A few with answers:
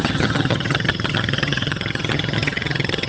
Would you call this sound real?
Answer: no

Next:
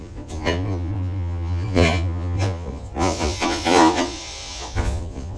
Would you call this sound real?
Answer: no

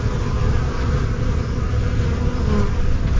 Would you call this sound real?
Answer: yes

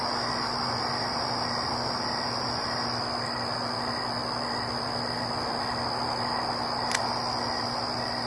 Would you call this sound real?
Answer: yes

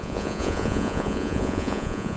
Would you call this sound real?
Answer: no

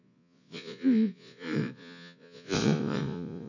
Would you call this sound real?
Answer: no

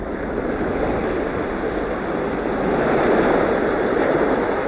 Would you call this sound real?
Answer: yes